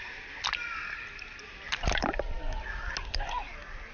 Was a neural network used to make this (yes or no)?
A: no